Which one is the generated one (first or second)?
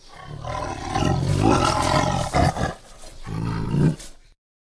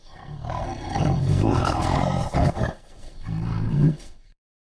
second